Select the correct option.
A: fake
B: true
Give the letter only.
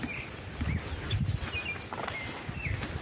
B